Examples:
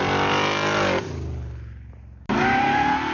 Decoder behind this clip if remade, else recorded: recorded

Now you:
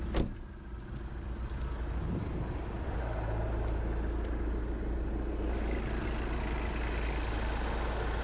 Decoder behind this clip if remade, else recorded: recorded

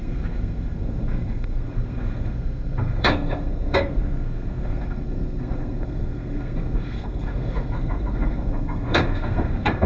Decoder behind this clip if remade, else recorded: remade, codec, SNAC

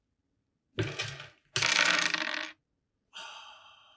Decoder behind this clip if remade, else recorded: recorded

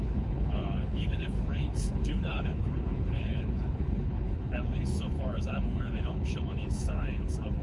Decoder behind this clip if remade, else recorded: remade, codec, HILCodec